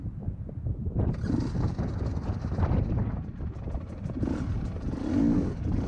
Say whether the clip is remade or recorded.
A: recorded